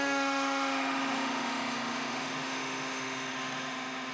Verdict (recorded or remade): remade